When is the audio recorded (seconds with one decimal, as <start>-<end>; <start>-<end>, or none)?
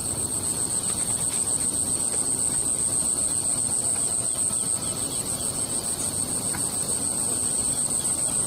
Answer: 0.0-8.5